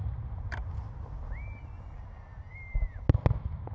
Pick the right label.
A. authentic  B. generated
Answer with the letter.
A